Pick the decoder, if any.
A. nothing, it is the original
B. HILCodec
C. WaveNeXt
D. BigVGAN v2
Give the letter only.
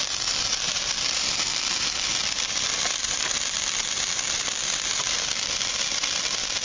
D